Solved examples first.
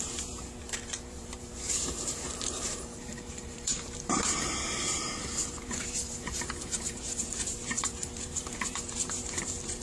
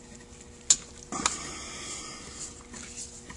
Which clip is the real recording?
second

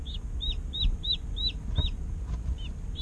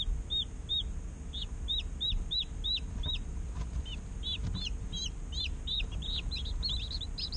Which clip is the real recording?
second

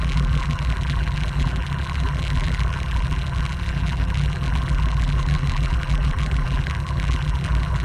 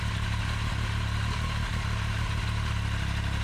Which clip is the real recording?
second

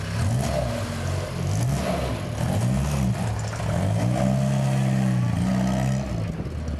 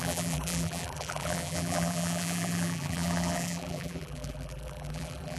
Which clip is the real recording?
first